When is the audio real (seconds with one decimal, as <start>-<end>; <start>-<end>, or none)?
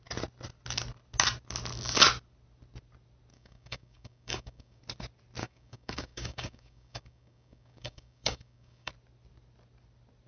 0.0-3.3; 4.8-5.4; 8.9-10.3